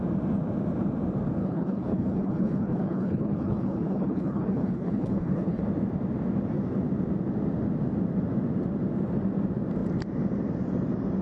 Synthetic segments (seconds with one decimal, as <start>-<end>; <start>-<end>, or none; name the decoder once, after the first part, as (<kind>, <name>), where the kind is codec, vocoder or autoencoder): 1.4-5.6 (codec, HILCodec)